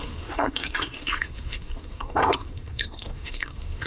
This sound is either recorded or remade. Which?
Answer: remade